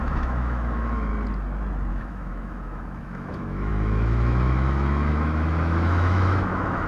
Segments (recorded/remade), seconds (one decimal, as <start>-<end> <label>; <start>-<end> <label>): 0.0-1.1 remade; 1.1-1.9 recorded; 1.9-6.9 remade